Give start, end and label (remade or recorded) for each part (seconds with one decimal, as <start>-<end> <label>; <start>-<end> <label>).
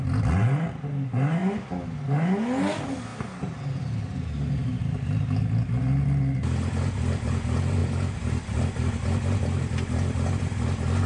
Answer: 0.0-11.1 recorded